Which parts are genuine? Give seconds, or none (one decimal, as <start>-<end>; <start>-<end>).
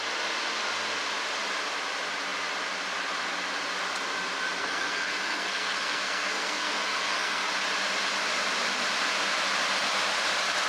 0.0-4.6; 7.5-10.7